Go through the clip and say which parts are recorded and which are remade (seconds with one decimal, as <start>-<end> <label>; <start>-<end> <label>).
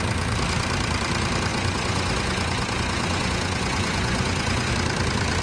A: 0.0-1.5 recorded; 1.5-4.7 remade; 4.7-5.4 recorded